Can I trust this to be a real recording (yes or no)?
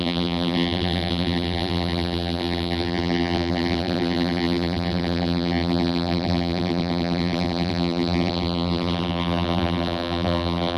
no